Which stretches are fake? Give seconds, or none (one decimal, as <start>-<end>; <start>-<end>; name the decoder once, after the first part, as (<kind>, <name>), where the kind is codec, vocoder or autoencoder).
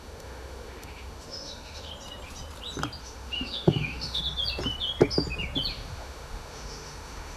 0.0-1.9 (autoencoder, DAC-VAE); 3.0-4.2; 5.7-7.4